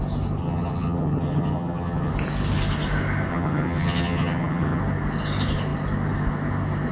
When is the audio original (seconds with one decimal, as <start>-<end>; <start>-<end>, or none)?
0.0-0.4; 2.1-3.3; 4.8-6.9